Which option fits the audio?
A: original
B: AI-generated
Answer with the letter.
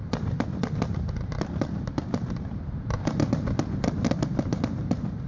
B